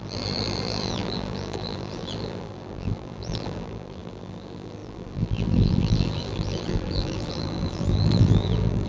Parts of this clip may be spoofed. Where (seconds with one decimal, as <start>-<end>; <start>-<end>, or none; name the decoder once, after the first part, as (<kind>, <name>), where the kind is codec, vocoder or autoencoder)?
0.0-8.9 (vocoder, BigVGAN v2)